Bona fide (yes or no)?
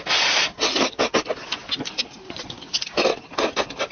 yes